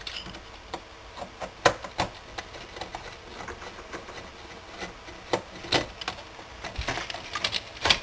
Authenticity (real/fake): real